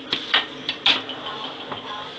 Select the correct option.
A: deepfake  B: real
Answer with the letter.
B